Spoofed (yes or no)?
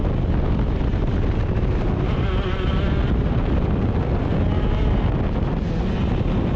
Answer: no